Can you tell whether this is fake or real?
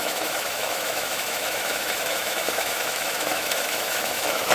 fake